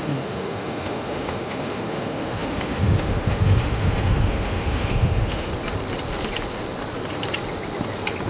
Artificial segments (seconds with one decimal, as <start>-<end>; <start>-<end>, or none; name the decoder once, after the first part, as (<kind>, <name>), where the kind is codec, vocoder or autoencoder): 0.0-5.5 (autoencoder, DAC-VAE)

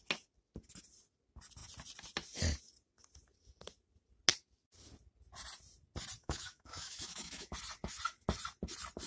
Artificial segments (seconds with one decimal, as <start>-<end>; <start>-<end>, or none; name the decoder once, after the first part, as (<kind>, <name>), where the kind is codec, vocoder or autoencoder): 6.2-7.5 (autoencoder, DAC-VAE)

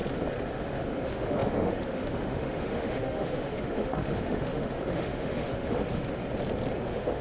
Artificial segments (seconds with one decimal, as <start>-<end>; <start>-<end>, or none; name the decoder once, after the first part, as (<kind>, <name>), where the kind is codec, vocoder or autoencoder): 0.6-6.2 (autoencoder, DAC-VAE); 6.8-7.2

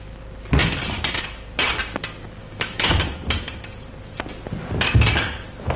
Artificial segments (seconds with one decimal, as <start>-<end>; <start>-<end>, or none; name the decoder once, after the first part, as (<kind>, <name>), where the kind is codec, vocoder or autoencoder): 2.4-3.1 (autoencoder, DAC-VAE)

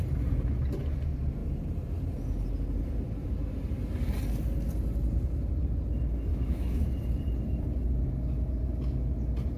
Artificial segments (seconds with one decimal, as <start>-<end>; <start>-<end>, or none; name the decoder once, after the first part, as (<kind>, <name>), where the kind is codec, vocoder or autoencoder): 6.3-6.9 (autoencoder, DAC-VAE)

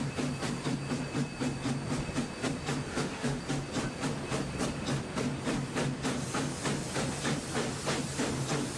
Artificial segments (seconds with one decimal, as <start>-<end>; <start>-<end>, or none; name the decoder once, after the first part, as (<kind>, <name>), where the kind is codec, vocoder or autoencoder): 2.9-3.4 (autoencoder, DAC-VAE)

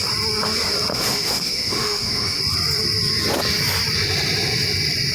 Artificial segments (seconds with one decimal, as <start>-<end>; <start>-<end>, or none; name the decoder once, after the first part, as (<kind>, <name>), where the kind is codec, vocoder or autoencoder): 0.9-2.4 (autoencoder, DAC-VAE)